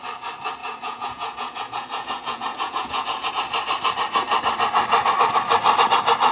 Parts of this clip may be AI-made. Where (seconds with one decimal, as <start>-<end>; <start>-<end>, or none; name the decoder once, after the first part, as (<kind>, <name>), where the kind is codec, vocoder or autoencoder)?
0.6-3.3 (vocoder, Vocos)